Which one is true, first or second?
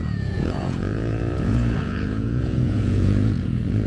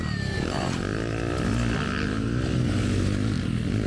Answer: second